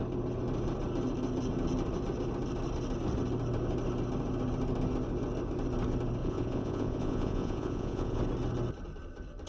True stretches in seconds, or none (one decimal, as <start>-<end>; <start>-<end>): 0.0-6.2; 8.2-9.5